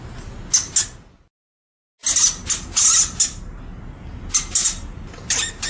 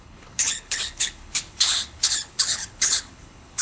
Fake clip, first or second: second